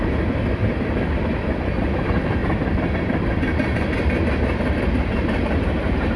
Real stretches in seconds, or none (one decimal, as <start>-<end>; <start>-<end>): 0.6-2.0; 2.4-3.0